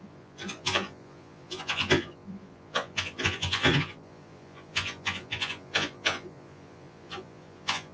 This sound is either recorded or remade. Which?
remade